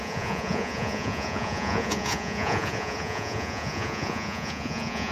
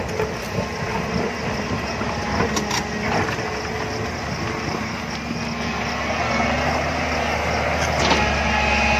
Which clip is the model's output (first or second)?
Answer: first